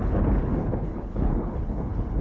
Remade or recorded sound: remade